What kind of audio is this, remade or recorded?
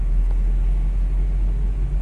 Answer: recorded